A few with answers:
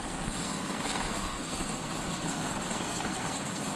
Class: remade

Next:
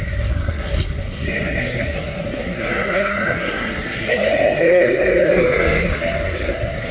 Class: remade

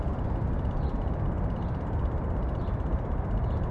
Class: recorded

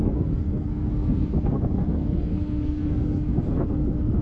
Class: remade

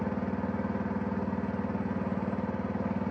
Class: recorded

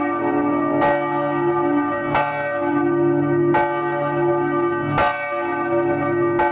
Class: recorded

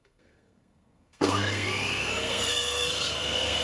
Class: remade